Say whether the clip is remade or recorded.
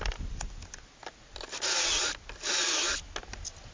recorded